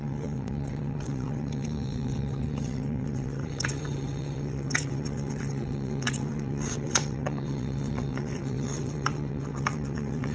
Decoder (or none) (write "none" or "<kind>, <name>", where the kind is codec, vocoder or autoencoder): vocoder, WaveNeXt